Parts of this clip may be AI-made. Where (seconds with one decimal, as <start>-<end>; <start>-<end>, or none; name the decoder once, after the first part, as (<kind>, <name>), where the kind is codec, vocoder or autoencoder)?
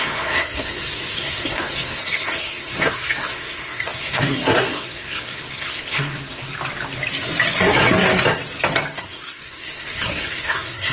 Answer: 0.0-6.5 (codec, SNAC); 9.0-10.9